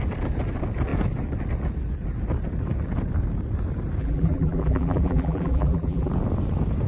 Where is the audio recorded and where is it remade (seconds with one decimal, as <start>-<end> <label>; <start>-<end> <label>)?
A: 0.0-4.0 recorded; 4.0-6.1 remade; 6.1-6.9 recorded